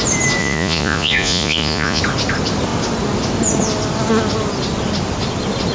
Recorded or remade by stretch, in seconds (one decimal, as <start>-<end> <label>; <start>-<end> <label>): 0.0-0.4 recorded; 0.4-2.0 remade; 2.0-5.7 recorded